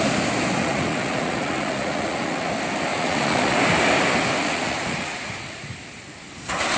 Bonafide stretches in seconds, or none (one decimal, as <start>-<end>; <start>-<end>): 0.0-0.6; 2.5-2.9; 3.6-4.4; 5.8-6.8